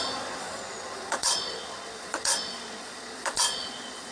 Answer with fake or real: fake